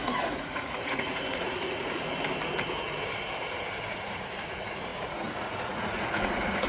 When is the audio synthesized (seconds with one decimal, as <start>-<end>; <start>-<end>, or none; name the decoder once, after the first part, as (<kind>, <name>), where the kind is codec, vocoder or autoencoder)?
0.0-2.1 (vocoder, Vocos); 3.9-6.7